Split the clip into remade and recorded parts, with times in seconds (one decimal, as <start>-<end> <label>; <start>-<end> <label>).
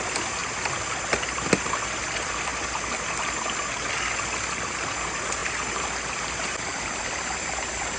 0.0-8.0 recorded